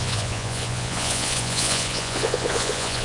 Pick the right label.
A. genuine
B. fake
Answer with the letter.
B